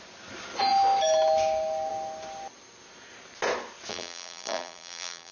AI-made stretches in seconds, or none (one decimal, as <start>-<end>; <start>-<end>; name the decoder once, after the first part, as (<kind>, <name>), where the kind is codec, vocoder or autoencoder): 3.9-5.3 (vocoder, BigVGAN v2)

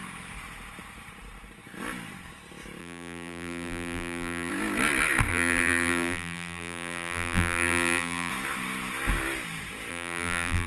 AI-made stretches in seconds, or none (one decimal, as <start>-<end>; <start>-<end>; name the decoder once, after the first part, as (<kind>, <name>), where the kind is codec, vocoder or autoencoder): 2.8-4.5 (vocoder, BigVGAN v2); 5.3-8.3; 9.9-10.7